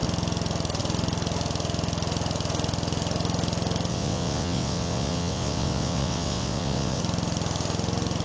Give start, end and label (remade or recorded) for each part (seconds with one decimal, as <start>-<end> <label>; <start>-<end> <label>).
0.0-3.9 recorded; 3.9-7.0 remade; 7.0-8.2 recorded